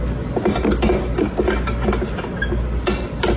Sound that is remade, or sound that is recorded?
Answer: recorded